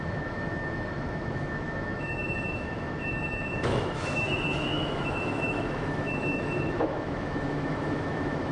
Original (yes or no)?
no